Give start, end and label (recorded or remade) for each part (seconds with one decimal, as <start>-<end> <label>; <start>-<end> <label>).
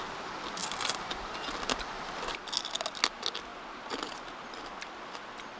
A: 0.0-5.6 recorded